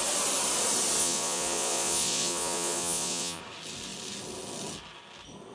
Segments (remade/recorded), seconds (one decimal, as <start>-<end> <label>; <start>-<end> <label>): 0.0-1.0 recorded; 1.0-3.4 remade; 3.4-5.5 recorded